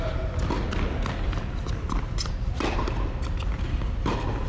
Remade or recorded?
recorded